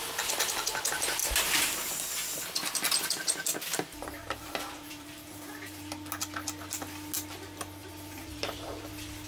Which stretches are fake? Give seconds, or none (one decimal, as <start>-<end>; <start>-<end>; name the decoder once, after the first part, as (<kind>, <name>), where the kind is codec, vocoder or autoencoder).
3.7-5.9 (vocoder, BigVGAN v2); 7.8-8.9